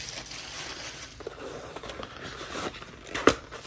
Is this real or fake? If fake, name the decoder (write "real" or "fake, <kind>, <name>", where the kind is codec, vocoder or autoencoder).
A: fake, vocoder, BigVGAN v2